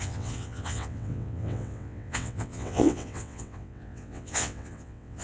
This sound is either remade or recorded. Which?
remade